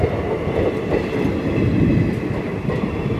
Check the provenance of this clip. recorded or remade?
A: recorded